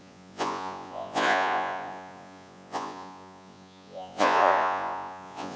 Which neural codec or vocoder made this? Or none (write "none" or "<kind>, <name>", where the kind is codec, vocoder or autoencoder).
vocoder, Vocos